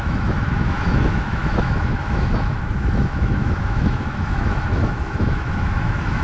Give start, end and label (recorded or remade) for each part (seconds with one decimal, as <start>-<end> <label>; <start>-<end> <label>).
0.0-6.2 remade